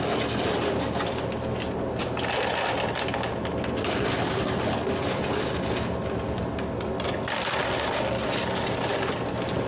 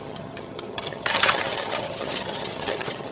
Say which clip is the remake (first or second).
second